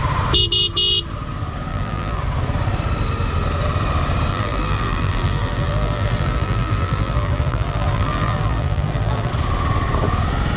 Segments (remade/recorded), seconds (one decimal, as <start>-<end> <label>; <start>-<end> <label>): 0.0-1.7 recorded; 1.7-2.2 remade; 2.2-4.3 recorded; 4.3-9.3 remade; 9.3-10.6 recorded